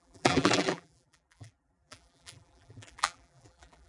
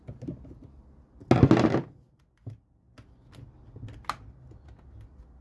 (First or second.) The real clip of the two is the second